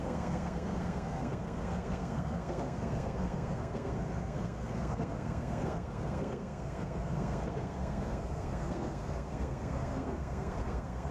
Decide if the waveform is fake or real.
fake